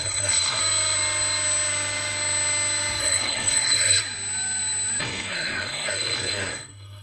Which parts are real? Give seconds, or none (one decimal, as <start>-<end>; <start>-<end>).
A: 0.6-3.0; 4.0-5.0